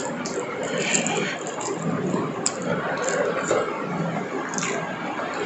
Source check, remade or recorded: recorded